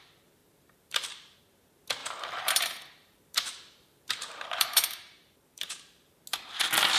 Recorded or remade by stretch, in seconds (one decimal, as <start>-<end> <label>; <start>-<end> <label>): 0.0-0.4 recorded; 0.4-1.4 remade; 1.4-2.0 recorded; 2.0-6.2 remade; 6.2-7.0 recorded